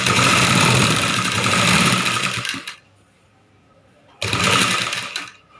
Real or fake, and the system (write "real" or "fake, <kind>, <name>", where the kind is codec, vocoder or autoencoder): fake, vocoder, BigVGAN v2